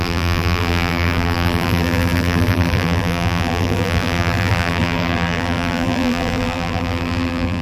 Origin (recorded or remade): remade